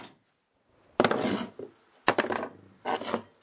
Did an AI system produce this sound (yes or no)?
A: no